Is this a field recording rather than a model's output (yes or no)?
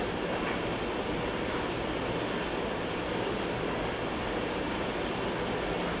yes